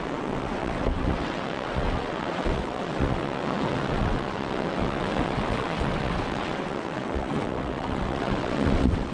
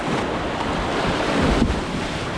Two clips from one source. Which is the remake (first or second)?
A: first